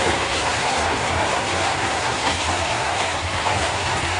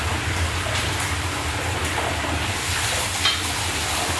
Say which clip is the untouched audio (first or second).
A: second